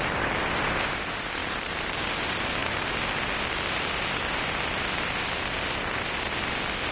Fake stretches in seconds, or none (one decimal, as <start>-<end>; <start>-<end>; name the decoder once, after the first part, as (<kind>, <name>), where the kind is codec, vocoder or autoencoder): none